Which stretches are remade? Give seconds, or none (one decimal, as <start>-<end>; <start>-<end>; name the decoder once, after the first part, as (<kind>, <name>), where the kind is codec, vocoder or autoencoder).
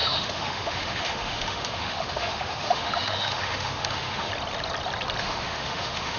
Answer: 0.0-4.3 (autoencoder, DAC-VAE); 5.2-6.2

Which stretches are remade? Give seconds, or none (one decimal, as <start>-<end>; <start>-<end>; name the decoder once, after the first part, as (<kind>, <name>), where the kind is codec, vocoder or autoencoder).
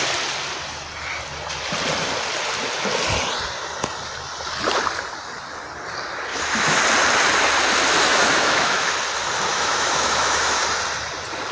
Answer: 6.3-6.8 (autoencoder, DAC-VAE); 8.1-8.9; 9.5-10.6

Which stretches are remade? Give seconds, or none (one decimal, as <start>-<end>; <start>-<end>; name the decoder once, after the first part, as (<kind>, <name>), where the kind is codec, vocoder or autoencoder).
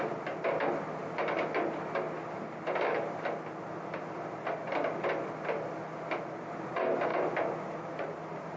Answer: none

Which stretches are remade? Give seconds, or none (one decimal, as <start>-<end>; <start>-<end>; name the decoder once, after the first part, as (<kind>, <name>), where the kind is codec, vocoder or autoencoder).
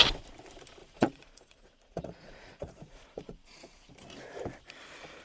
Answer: 0.8-3.9 (vocoder, Vocos)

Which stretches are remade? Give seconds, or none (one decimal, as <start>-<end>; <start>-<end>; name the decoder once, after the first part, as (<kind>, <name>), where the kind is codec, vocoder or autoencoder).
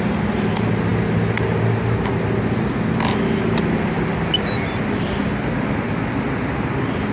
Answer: none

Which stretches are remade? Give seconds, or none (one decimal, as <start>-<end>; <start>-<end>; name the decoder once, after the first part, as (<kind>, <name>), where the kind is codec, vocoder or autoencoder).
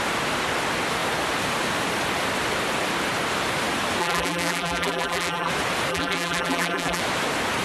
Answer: 4.0-5.5 (vocoder, BigVGAN v2); 5.9-7.0